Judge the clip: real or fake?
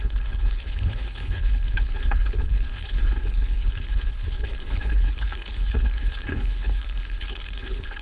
fake